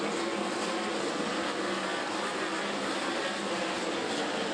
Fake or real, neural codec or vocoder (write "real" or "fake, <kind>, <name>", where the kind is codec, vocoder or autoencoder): real